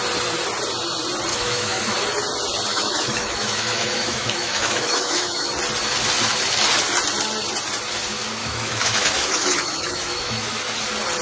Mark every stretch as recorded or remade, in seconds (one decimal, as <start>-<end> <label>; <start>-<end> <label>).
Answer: 0.0-1.3 recorded; 1.3-1.8 remade; 1.8-2.7 recorded; 2.7-5.5 remade; 5.5-8.4 recorded; 8.4-10.6 remade; 10.6-11.2 recorded